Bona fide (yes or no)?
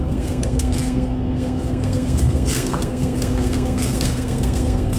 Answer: no